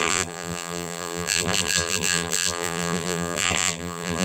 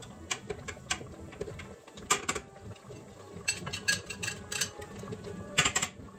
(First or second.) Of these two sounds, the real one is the second